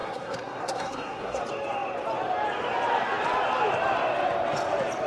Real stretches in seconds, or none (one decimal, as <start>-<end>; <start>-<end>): 1.4-5.1